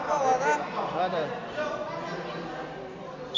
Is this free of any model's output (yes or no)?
yes